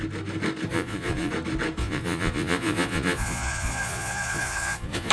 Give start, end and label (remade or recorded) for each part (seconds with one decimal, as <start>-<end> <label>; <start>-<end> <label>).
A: 0.0-0.7 recorded; 0.7-1.3 remade; 1.3-1.8 recorded; 1.8-5.1 remade